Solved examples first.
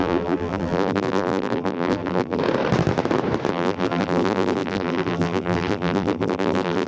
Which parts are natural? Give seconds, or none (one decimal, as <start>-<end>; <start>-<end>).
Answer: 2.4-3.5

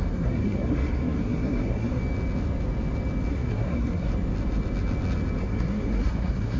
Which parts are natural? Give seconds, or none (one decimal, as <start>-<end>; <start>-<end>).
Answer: 2.0-3.3; 4.1-5.4

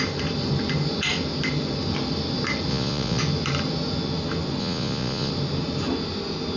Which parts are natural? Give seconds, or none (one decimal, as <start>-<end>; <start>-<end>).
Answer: 0.0-2.7; 3.2-4.6; 5.3-6.6